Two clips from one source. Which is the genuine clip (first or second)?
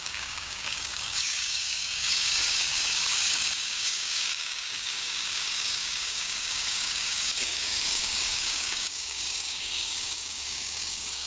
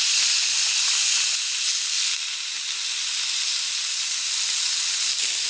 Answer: second